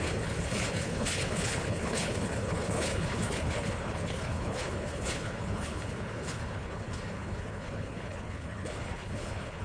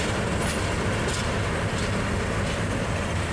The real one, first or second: second